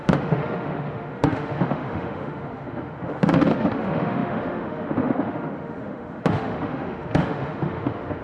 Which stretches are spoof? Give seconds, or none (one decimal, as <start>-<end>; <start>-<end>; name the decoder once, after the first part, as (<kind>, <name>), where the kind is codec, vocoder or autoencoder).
0.0-8.2 (autoencoder, DAC-VAE)